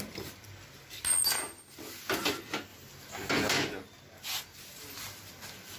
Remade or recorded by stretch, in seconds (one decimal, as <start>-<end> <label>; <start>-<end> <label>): 0.0-5.8 recorded

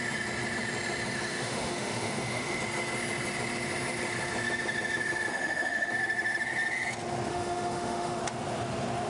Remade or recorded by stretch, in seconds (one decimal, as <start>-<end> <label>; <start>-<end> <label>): 0.0-1.3 recorded; 1.3-2.6 remade; 2.6-5.3 recorded; 5.3-5.9 remade; 5.9-7.3 recorded; 7.3-8.2 remade; 8.2-9.1 recorded

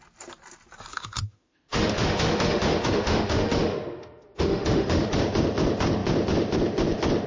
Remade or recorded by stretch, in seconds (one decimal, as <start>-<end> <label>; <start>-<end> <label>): 0.0-0.9 recorded; 0.9-5.2 remade; 5.2-7.3 recorded

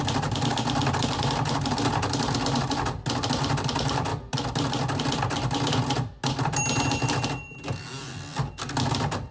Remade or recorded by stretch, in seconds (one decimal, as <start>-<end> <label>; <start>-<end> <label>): 0.0-9.3 recorded

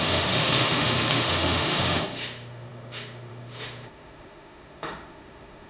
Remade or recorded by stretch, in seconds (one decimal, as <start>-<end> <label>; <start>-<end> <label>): 0.0-5.7 remade

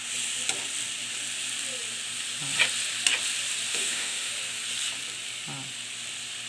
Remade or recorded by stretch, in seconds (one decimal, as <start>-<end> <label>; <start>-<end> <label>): 0.0-3.7 recorded; 3.7-4.3 remade; 4.3-6.5 recorded

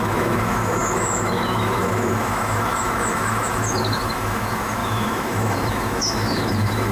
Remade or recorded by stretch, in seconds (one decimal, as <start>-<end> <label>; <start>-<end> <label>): 0.0-6.9 remade